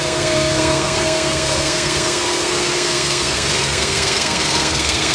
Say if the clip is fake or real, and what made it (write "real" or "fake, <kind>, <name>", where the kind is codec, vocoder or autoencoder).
fake, codec, SNAC